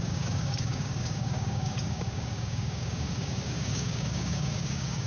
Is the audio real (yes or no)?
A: no